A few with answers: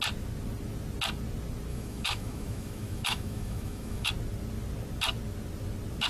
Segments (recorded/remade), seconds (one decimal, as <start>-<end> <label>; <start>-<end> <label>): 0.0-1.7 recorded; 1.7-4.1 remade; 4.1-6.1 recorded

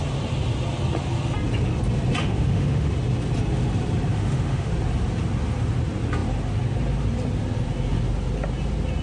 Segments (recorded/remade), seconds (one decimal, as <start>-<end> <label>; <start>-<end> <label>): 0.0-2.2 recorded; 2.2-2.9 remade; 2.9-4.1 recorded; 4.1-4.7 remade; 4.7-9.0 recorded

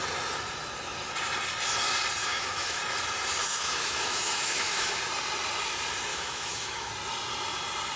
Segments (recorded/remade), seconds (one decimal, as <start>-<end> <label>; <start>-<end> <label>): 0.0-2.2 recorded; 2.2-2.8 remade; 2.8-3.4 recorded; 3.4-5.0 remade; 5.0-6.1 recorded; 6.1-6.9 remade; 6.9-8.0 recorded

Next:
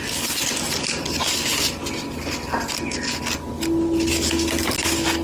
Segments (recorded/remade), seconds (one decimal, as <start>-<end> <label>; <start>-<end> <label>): 0.0-5.2 recorded

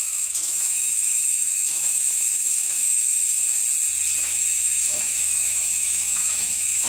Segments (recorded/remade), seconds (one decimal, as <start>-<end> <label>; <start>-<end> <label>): 0.0-3.6 remade; 3.6-4.2 recorded; 4.2-6.9 remade